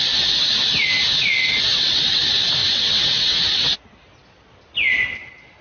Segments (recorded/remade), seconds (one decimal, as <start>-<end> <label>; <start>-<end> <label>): 0.0-1.7 recorded; 1.7-2.2 remade; 2.2-2.6 recorded; 2.6-3.7 remade; 3.7-5.6 recorded